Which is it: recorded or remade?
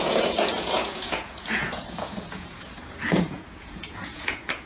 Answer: remade